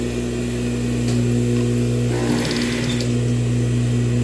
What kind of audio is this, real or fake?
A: real